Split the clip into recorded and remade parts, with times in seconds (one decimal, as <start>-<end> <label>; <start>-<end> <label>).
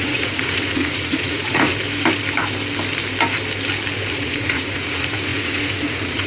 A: 0.0-1.7 remade; 1.7-4.1 recorded; 4.1-6.3 remade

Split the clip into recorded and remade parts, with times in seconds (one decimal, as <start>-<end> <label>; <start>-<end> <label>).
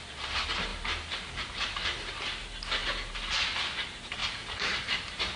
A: 0.0-0.7 recorded; 0.7-2.1 remade; 2.1-2.8 recorded; 2.8-3.3 remade; 3.3-4.2 recorded; 4.2-5.4 remade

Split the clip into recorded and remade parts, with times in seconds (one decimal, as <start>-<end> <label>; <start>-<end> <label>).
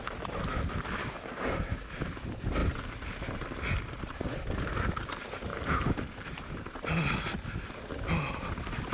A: 0.0-1.0 recorded; 1.0-1.9 remade; 1.9-8.9 recorded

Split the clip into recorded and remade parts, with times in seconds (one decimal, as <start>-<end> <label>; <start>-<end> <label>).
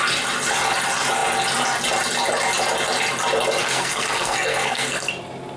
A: 0.0-3.6 recorded; 3.6-5.1 remade; 5.1-5.6 recorded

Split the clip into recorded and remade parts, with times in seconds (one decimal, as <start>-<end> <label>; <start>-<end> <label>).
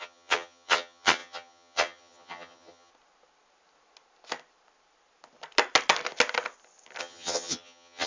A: 0.0-2.9 remade; 2.9-7.0 recorded; 7.0-8.1 remade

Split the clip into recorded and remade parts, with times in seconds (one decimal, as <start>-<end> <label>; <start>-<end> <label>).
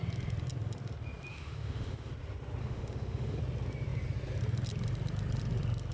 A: 0.0-1.3 recorded; 1.3-2.1 remade; 2.1-2.6 recorded; 2.6-3.4 remade; 3.4-5.9 recorded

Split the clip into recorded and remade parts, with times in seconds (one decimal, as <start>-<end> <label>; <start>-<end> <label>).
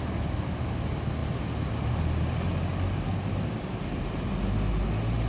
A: 0.0-5.3 recorded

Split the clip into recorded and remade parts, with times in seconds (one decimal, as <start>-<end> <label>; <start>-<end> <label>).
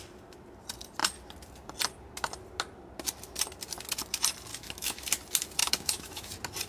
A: 0.0-4.5 recorded; 4.5-5.0 remade; 5.0-5.6 recorded; 5.6-6.3 remade; 6.3-6.7 recorded